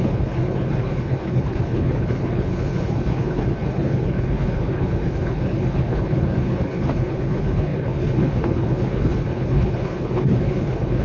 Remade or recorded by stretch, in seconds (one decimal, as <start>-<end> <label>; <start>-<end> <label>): 0.0-11.0 remade